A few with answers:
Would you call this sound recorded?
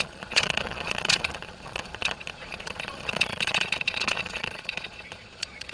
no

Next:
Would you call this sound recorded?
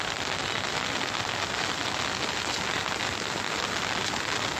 yes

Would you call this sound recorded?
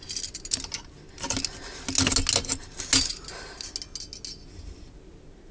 yes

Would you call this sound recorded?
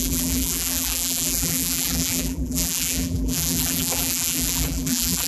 no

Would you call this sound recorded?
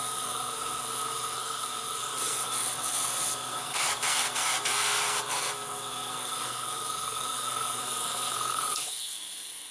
no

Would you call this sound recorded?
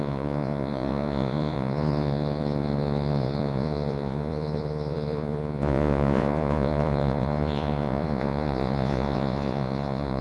no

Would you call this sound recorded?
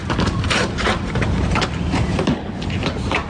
no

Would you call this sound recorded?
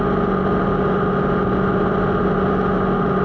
yes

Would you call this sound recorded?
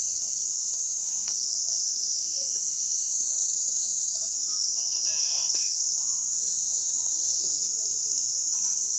no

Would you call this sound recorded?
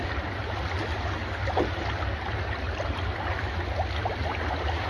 yes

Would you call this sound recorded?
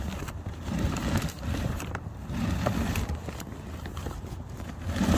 yes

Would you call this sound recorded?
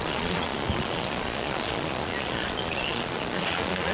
no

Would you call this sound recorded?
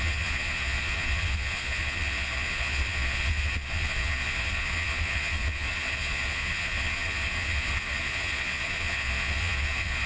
no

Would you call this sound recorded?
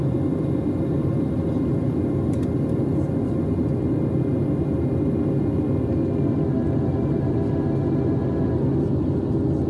yes